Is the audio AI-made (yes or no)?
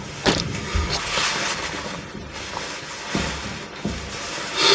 no